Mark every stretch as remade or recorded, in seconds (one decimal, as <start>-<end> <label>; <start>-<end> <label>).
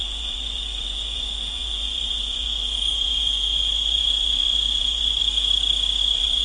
0.0-5.2 remade; 5.2-6.0 recorded; 6.0-6.4 remade